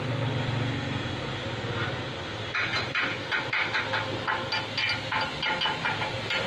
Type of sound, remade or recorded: recorded